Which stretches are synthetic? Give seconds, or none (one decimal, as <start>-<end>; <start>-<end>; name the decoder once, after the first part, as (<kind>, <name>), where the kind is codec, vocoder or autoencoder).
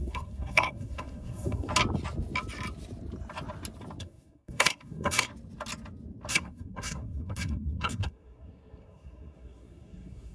0.0-1.7 (codec, SNAC); 4.0-5.3; 6.3-10.3